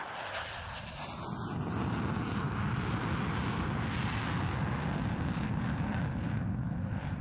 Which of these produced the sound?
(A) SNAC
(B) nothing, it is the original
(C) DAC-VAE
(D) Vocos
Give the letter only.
B